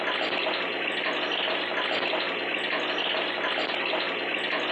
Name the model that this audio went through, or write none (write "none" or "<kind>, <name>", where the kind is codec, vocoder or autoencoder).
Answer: none